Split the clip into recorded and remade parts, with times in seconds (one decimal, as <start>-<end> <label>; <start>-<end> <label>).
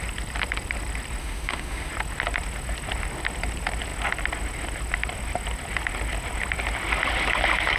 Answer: 0.0-1.2 recorded; 1.2-1.9 remade; 1.9-7.8 recorded